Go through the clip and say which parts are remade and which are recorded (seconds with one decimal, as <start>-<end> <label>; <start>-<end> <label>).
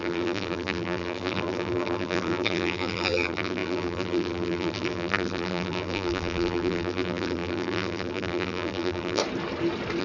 0.0-9.2 remade; 9.2-10.0 recorded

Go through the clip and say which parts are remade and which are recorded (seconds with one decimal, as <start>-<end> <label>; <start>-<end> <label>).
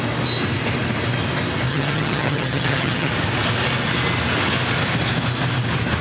0.0-1.7 recorded; 1.7-3.1 remade; 3.1-6.0 recorded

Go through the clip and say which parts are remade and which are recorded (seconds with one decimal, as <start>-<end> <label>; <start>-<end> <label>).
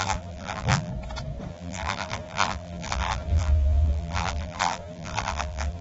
0.0-0.9 remade; 0.9-1.5 recorded; 1.5-5.8 remade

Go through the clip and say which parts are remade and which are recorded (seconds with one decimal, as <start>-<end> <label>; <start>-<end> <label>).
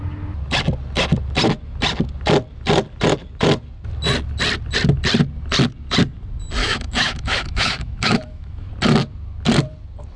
0.0-6.6 recorded; 6.6-8.7 remade; 8.7-10.2 recorded